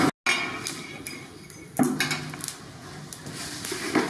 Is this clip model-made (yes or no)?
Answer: no